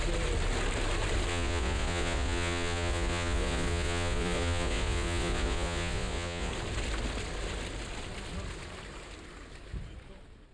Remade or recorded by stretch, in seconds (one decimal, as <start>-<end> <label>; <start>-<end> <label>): 0.0-1.3 recorded; 1.3-6.5 remade; 6.5-10.5 recorded

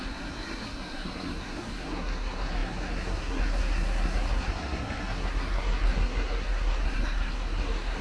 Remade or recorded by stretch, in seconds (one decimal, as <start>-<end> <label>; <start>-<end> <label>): 0.0-8.0 remade

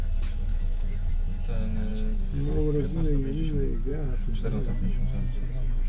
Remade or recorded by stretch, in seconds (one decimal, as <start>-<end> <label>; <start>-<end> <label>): 0.0-0.5 recorded; 0.5-1.1 remade; 1.1-5.9 recorded